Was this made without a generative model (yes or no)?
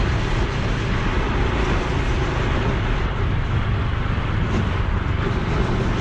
yes